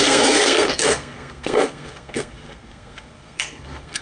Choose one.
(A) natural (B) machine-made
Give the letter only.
B